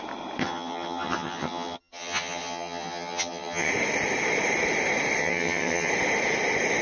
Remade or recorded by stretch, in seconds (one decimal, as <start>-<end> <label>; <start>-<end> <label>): 0.0-0.4 recorded; 0.4-3.7 remade; 3.7-5.2 recorded; 5.2-5.9 remade; 5.9-6.8 recorded